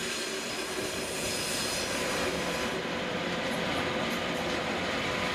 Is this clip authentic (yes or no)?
yes